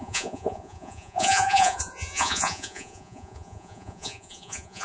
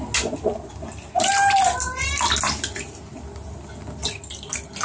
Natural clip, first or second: second